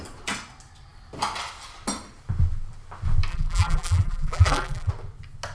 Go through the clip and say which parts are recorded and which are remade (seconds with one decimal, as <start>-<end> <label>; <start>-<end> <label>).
0.0-3.3 recorded; 3.3-4.9 remade; 4.9-5.5 recorded